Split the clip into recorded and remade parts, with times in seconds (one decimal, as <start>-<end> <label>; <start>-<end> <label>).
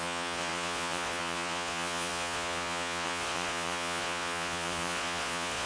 0.0-5.7 remade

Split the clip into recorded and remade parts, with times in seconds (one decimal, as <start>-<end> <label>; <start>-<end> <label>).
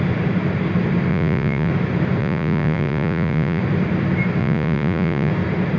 0.0-1.1 recorded; 1.1-1.7 remade; 1.7-2.2 recorded; 2.2-3.6 remade; 3.6-4.4 recorded; 4.4-5.3 remade; 5.3-5.8 recorded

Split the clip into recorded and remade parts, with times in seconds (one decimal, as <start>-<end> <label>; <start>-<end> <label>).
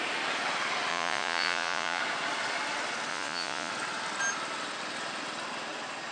0.0-0.9 recorded; 0.9-2.0 remade; 2.0-3.1 recorded; 3.1-3.7 remade; 3.7-6.1 recorded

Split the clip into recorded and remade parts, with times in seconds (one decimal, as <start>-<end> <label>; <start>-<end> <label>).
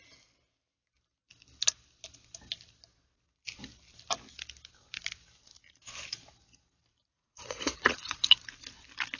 0.0-7.1 recorded; 7.1-8.3 remade; 8.3-9.2 recorded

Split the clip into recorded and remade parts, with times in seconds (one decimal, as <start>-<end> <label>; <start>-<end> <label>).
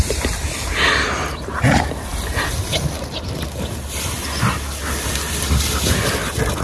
0.0-6.6 recorded